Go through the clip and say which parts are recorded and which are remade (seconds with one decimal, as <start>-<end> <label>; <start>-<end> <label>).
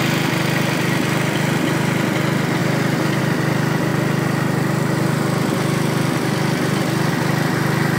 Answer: 0.0-8.0 recorded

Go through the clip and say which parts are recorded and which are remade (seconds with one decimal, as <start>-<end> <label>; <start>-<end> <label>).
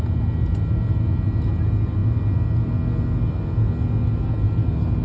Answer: 0.0-5.0 recorded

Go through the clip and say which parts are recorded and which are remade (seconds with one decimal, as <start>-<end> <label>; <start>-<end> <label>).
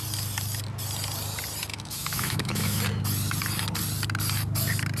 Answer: 0.0-1.7 recorded; 1.7-2.8 remade; 2.8-5.0 recorded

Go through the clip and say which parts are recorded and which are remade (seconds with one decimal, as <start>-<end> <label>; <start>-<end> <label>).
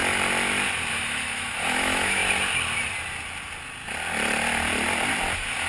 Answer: 0.0-0.9 recorded; 0.9-2.2 remade; 2.2-5.7 recorded